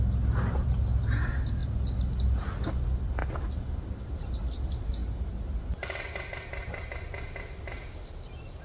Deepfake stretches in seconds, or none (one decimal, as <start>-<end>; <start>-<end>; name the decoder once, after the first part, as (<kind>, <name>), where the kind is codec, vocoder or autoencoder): none